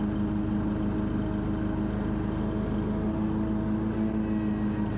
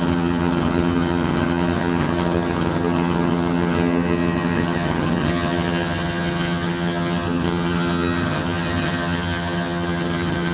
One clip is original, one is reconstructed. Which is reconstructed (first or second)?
second